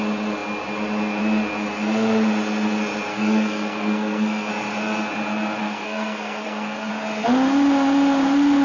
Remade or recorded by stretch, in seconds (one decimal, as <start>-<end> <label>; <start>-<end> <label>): 0.0-3.1 recorded; 3.1-4.5 remade; 4.5-5.6 recorded; 5.6-6.9 remade; 6.9-8.6 recorded